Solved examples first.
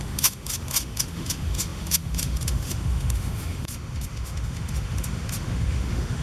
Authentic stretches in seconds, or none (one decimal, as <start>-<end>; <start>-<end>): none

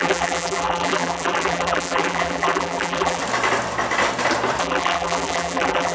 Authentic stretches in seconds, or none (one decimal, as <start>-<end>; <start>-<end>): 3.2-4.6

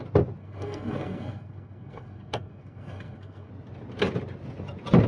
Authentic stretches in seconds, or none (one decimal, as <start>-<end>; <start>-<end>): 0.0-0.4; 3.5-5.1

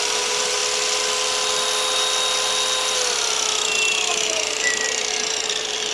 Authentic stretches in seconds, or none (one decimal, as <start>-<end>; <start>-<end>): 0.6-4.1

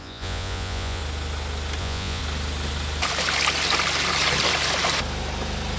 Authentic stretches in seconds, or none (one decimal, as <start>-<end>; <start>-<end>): 1.0-1.8; 2.2-5.8

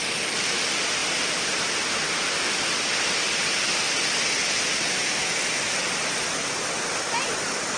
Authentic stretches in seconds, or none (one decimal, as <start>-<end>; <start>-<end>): 0.0-7.8

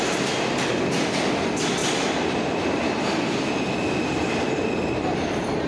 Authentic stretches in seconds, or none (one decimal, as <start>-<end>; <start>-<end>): 0.0-5.7

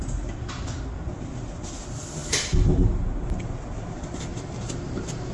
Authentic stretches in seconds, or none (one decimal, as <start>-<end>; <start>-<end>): 0.0-4.3